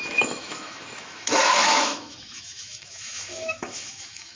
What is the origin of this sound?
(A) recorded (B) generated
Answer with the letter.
B